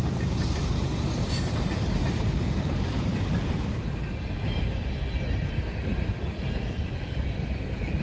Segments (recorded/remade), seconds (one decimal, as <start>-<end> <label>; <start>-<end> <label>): 0.0-3.1 remade; 3.1-5.8 recorded; 5.8-8.0 remade